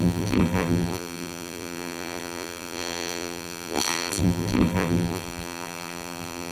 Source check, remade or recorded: remade